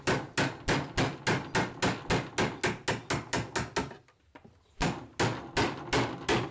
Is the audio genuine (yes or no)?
yes